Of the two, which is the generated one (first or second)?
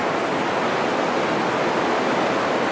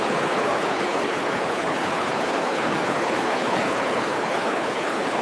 second